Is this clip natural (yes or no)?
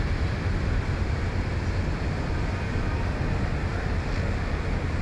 yes